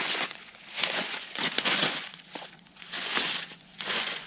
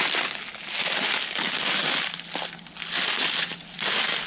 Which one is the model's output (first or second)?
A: first